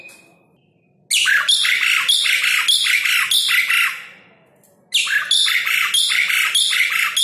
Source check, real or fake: real